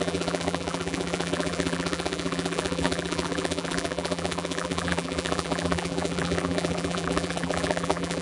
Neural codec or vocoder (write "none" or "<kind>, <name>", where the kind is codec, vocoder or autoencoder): vocoder, BigVGAN v2